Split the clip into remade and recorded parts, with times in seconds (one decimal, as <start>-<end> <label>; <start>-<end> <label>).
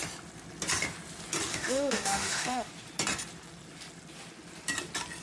0.0-1.5 recorded; 1.5-2.7 remade; 2.7-5.2 recorded